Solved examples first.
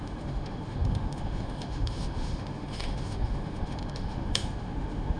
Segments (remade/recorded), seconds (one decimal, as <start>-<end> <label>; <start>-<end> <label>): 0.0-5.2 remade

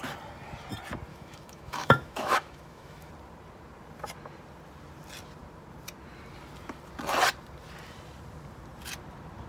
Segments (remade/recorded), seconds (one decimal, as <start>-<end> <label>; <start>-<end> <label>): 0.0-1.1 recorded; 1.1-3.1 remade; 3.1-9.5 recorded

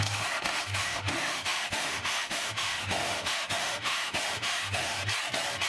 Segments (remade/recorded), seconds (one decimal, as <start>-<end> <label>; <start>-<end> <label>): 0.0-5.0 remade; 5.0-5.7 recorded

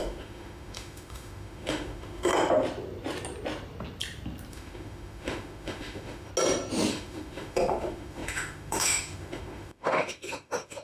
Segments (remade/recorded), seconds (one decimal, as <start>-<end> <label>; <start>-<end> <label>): 0.0-2.3 remade; 2.3-4.5 recorded; 4.5-6.3 remade; 6.3-6.9 recorded; 6.9-10.8 remade

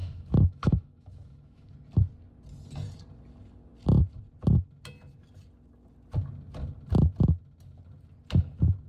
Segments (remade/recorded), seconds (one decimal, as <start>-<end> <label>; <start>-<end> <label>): 0.0-1.7 remade; 1.7-8.9 recorded